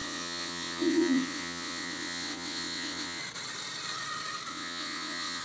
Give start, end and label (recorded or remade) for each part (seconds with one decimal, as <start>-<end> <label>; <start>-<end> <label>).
0.0-3.2 remade; 3.2-4.5 recorded; 4.5-5.4 remade